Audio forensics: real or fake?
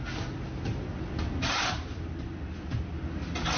real